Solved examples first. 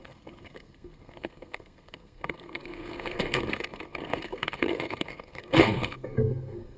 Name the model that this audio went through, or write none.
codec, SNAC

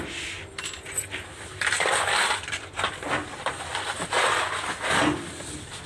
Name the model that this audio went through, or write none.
none